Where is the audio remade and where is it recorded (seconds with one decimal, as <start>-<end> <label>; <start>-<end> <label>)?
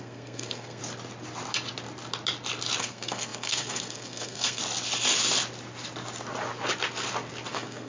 0.0-0.8 remade; 0.8-2.8 recorded; 2.8-4.6 remade; 4.6-7.5 recorded; 7.5-7.9 remade